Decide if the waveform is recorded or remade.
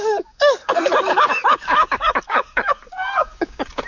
remade